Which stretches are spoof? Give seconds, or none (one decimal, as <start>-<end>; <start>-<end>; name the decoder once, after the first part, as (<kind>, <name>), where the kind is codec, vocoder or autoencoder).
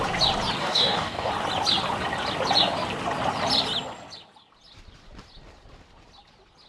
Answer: 0.6-1.3 (codec, DAC)